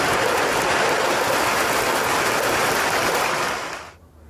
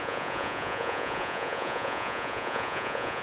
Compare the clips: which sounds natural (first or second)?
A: first